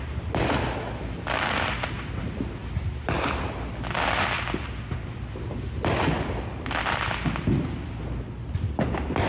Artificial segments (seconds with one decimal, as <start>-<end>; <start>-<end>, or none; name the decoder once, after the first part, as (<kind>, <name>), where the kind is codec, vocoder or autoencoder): none